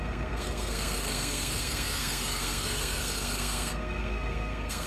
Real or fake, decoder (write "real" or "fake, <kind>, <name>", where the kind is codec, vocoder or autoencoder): fake, codec, SNAC